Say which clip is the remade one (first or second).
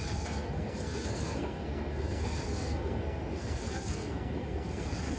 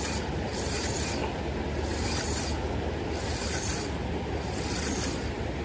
first